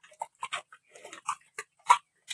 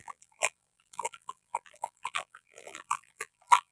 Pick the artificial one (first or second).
second